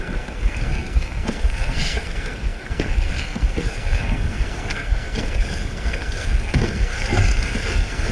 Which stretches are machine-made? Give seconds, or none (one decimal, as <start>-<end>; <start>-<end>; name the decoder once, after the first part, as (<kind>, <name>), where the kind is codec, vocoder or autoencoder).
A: 0.0-8.1 (codec, SNAC)